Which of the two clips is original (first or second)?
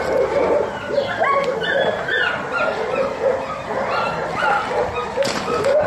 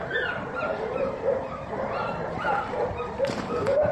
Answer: first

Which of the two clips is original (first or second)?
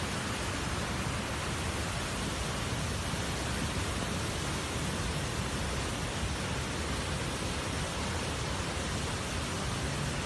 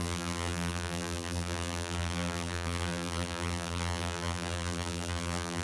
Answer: first